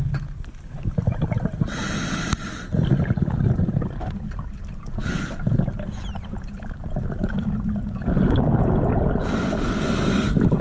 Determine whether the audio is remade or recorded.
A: recorded